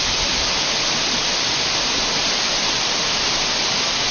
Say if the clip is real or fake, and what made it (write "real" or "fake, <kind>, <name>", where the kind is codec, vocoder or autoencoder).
real